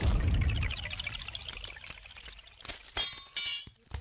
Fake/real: real